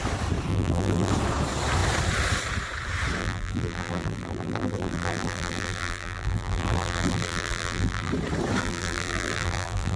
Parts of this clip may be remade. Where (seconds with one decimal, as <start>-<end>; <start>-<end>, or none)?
0.5-1.1; 3.2-8.1; 8.6-10.0